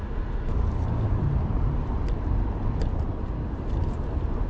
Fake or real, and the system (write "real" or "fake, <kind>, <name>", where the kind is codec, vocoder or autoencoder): real